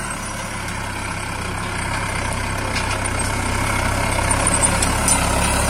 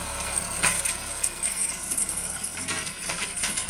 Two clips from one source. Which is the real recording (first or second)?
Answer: first